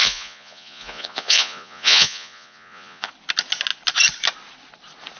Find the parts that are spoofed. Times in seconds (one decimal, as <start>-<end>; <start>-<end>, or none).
0.0-3.1